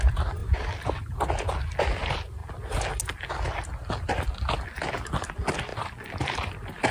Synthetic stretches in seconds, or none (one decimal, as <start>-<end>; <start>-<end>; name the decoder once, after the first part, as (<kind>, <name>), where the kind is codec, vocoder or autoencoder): none